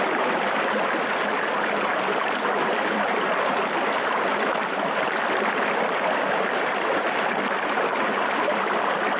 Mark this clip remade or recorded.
recorded